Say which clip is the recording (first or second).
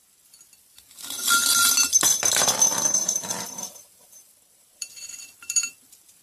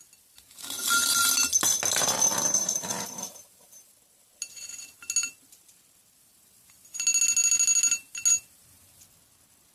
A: second